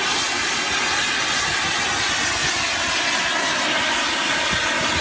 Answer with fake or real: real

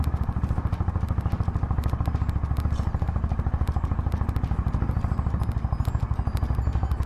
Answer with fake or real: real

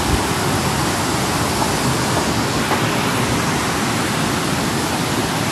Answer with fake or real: real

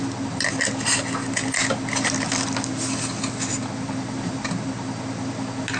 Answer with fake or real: real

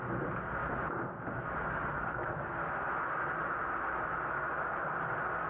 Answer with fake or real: real